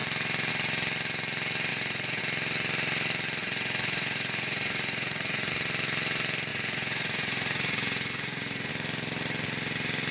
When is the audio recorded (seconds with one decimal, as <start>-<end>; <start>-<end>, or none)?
0.0-1.7; 2.2-3.4; 5.5-6.5; 8.7-10.1